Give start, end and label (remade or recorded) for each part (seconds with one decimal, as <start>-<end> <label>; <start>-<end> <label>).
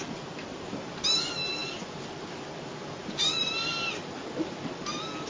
0.0-1.6 recorded; 1.6-2.4 remade; 2.4-5.3 recorded